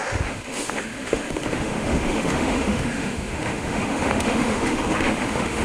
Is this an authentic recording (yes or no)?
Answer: no